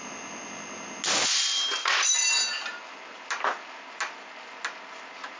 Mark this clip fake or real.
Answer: real